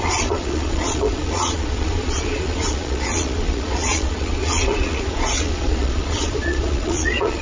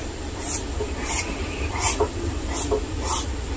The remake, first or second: first